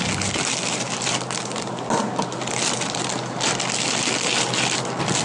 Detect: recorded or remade recorded